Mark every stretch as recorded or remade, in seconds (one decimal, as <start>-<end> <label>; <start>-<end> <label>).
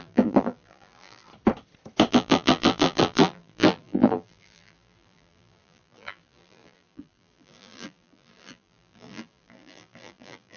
0.0-1.3 remade; 1.3-2.1 recorded; 2.1-10.6 remade